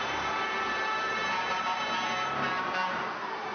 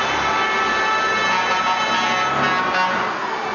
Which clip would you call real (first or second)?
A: second